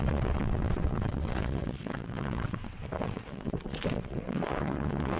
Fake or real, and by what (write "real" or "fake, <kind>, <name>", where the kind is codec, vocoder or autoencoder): fake, vocoder, WaveNeXt